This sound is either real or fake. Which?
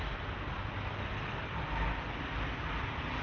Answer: real